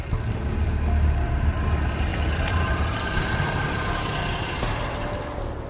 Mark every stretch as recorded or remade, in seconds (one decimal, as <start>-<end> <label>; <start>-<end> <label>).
0.0-5.7 recorded